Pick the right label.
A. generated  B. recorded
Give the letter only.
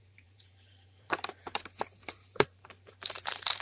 A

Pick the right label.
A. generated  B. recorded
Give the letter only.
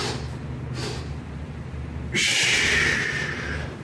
B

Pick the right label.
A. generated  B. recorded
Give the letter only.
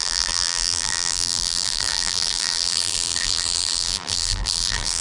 A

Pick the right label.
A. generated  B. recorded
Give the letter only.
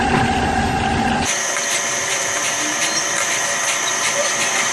A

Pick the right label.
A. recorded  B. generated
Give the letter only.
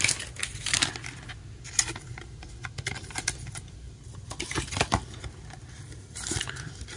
A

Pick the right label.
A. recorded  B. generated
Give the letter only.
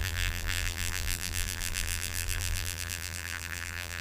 B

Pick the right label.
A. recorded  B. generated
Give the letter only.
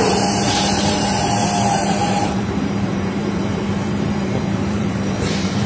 B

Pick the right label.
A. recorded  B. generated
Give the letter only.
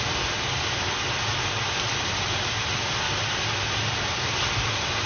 A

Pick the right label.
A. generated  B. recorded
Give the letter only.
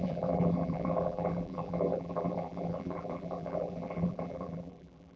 A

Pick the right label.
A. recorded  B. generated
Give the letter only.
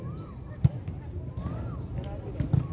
A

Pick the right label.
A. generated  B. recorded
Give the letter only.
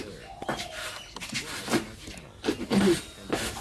B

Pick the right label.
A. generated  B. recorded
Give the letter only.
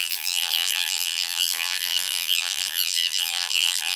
A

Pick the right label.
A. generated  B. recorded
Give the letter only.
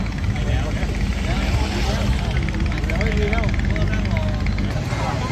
B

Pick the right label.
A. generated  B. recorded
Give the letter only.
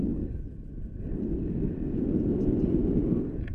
B